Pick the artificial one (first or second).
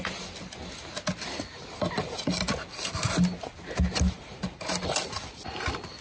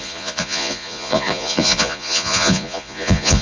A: second